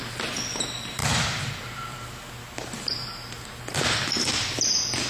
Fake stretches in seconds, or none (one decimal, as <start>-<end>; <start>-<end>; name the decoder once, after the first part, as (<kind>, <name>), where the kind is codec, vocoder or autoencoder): none